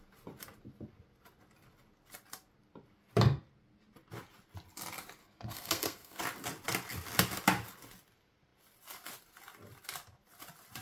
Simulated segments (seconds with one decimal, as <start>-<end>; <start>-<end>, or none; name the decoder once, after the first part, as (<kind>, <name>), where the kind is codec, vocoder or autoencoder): 5.2-6.2 (codec, SNAC)